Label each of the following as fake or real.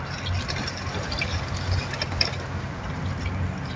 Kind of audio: real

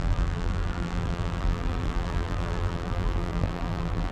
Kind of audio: fake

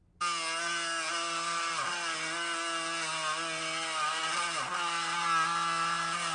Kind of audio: real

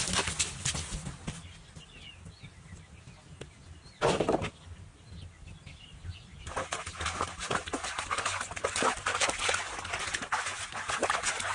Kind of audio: real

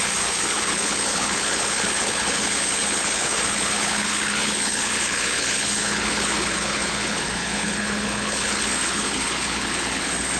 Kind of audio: fake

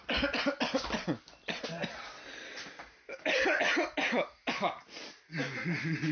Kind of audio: real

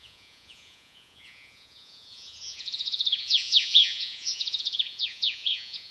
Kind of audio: fake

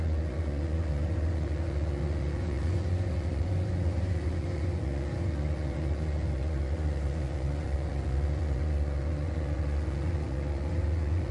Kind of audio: fake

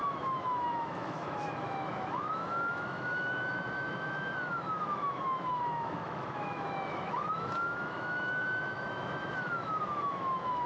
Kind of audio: fake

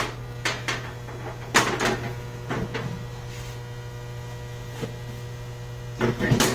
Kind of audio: real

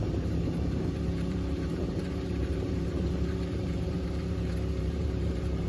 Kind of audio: fake